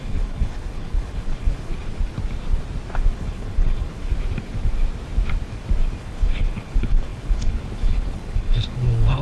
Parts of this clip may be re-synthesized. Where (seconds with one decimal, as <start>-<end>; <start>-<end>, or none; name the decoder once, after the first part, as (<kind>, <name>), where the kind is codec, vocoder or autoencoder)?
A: 0.0-1.7 (codec, HILCodec); 3.1-4.1; 6.0-9.2